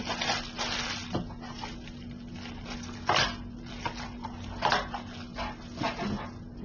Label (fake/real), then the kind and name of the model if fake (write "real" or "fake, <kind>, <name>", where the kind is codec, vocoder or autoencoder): real